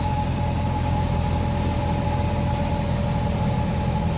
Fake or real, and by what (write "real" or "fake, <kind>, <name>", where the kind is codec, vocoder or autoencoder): real